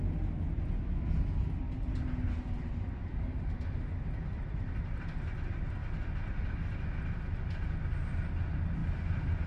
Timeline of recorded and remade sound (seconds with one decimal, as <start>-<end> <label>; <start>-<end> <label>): 0.0-3.1 recorded; 3.1-3.9 remade; 3.9-9.5 recorded